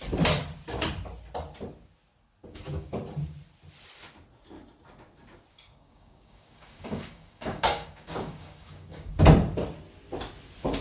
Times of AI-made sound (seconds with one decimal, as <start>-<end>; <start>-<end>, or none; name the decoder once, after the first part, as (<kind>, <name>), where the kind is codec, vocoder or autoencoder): 2.4-2.9 (codec, DAC); 5.5-9.1